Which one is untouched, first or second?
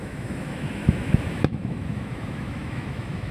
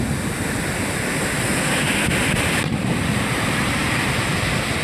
second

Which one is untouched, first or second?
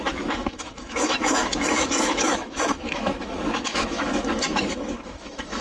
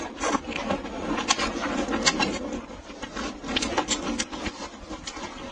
second